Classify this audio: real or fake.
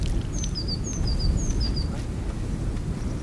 real